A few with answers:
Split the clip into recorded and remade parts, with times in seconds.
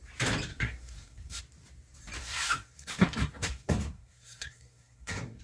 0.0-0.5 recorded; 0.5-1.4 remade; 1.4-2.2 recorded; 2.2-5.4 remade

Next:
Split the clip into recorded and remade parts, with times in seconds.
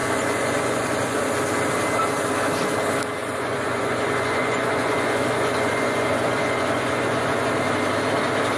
0.0-1.2 remade; 1.2-3.2 recorded; 3.2-7.5 remade; 7.5-8.6 recorded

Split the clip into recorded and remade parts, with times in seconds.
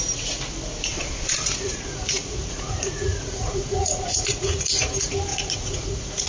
0.0-0.9 recorded; 0.9-4.7 remade; 4.7-5.3 recorded; 5.3-6.3 remade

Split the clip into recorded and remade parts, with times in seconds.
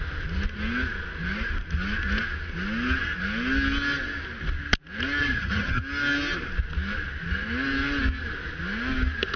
0.0-5.2 recorded; 5.2-5.8 remade; 5.8-9.4 recorded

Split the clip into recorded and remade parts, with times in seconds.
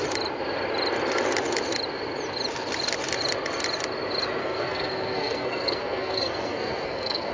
0.0-4.4 recorded; 4.4-7.3 remade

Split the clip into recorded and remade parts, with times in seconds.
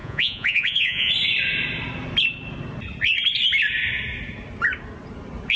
0.0-1.1 remade; 1.1-5.6 recorded